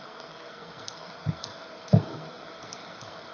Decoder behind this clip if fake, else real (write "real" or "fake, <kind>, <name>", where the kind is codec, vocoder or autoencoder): fake, codec, SNAC